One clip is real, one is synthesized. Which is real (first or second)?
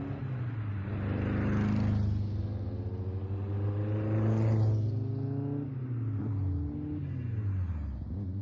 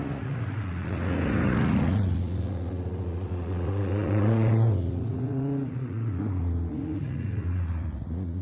first